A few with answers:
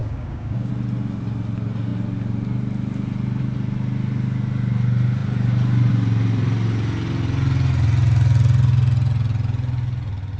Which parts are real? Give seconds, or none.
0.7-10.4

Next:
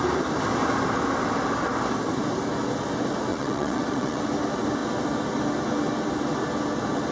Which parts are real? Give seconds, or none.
0.0-3.3; 4.2-7.1

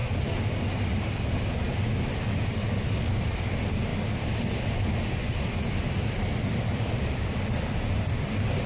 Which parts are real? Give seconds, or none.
0.0-8.7

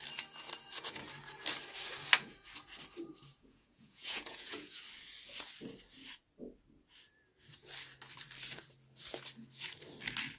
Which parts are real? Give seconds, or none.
0.0-3.3; 4.8-10.4

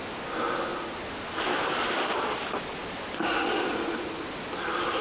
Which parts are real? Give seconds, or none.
0.0-5.0

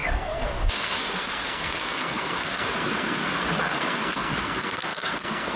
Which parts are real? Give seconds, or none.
none